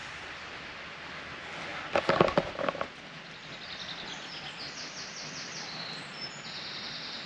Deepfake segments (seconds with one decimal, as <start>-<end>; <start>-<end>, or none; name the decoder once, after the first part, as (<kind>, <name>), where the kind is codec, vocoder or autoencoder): 0.0-1.1 (vocoder, BigVGAN v2)